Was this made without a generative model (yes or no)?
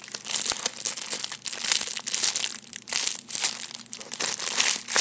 yes